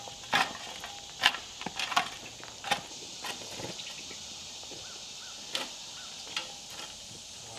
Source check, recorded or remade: recorded